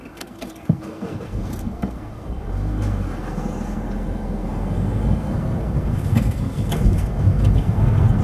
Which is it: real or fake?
fake